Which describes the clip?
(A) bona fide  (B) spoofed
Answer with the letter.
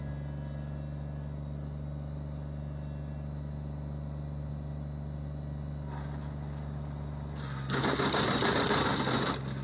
A